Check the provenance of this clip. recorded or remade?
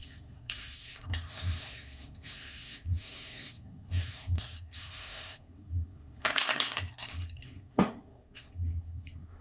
remade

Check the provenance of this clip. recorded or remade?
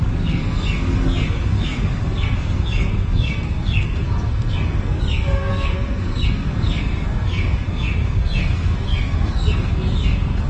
remade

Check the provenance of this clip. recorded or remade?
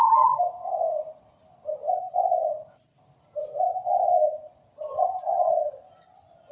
recorded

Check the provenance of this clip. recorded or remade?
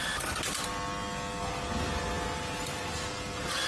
recorded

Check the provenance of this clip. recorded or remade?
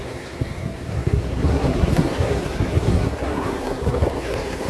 remade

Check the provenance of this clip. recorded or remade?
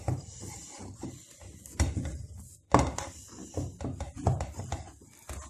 recorded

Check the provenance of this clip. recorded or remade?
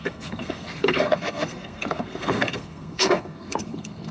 remade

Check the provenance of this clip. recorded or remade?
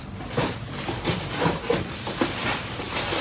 recorded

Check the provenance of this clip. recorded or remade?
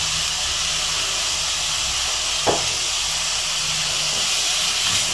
recorded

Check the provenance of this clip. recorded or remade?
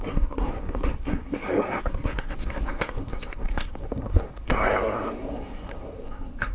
remade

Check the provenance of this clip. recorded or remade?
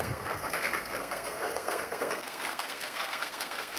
remade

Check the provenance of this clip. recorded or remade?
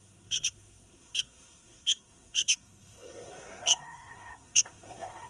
remade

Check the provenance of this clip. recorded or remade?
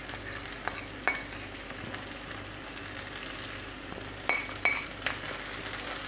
recorded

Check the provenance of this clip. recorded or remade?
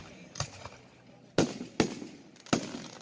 recorded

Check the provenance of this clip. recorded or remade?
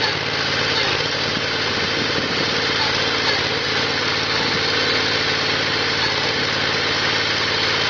recorded